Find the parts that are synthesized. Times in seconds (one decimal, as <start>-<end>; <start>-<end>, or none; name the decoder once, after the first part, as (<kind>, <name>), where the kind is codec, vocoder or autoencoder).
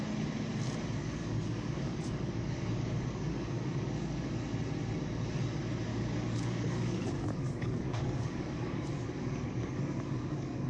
1.0-4.3 (codec, DAC); 5.9-10.7